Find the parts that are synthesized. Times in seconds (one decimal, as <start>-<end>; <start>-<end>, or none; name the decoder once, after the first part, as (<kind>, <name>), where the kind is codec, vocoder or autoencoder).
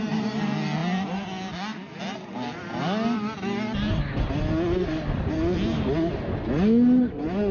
none